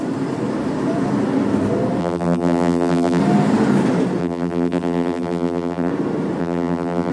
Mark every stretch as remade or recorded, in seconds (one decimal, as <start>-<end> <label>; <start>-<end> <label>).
0.0-2.0 recorded; 2.0-3.2 remade; 3.2-4.2 recorded; 4.2-5.9 remade; 5.9-6.4 recorded; 6.4-7.1 remade